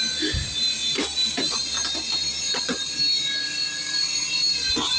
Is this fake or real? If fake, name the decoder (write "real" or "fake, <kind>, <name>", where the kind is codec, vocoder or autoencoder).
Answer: real